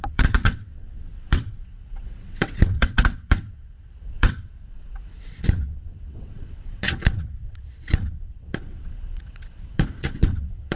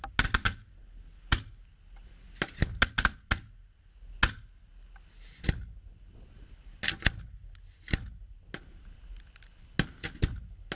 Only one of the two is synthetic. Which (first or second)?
first